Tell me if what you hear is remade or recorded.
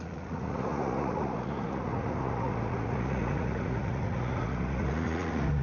remade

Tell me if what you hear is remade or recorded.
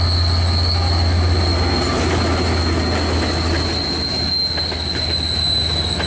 recorded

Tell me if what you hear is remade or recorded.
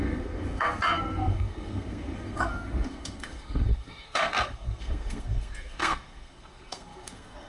remade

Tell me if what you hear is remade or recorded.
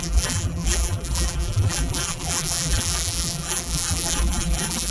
remade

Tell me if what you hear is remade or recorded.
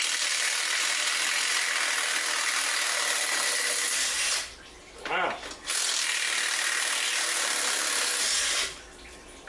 recorded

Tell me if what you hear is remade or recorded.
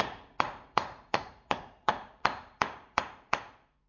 remade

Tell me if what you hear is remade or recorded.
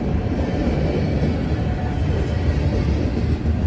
recorded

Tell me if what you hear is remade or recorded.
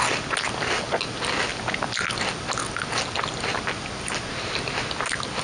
recorded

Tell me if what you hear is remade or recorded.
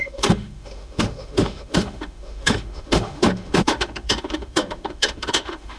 remade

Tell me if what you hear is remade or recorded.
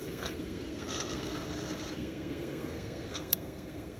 remade